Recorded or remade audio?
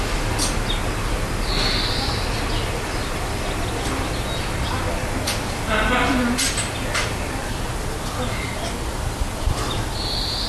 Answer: recorded